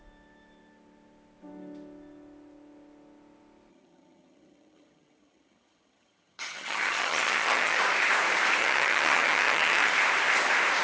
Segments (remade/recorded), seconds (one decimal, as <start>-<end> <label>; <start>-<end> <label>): 0.0-3.7 recorded; 3.7-7.8 remade; 7.8-8.6 recorded; 8.6-9.9 remade; 9.9-10.8 recorded